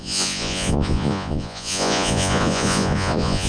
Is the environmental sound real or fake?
fake